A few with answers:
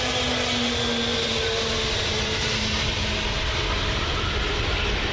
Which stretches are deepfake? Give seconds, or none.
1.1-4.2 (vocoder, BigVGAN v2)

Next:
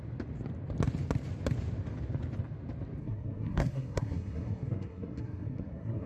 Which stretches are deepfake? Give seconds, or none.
3.0-6.1 (codec, SNAC)

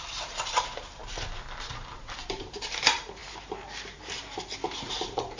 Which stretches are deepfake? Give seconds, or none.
0.0-1.0 (vocoder, BigVGAN v2); 1.7-5.4

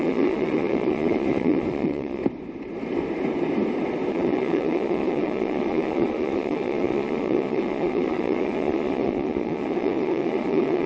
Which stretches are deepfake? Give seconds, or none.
0.0-2.2 (vocoder, Vocos); 4.1-10.9

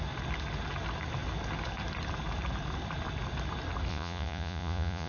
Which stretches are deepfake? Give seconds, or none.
3.9-5.1 (vocoder, Vocos)

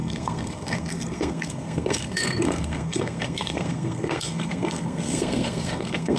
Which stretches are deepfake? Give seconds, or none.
0.0-6.2 (codec, SNAC)

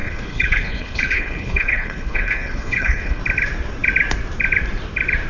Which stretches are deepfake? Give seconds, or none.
0.0-3.2 (codec, HILCodec)